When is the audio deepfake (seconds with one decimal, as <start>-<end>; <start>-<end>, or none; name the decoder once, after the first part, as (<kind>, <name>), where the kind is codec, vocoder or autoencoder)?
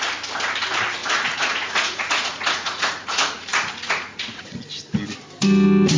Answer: 1.0-4.6 (vocoder, Vocos)